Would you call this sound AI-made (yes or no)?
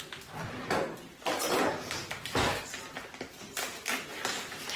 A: no